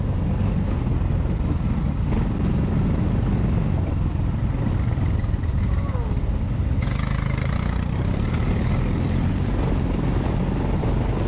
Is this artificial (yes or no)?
no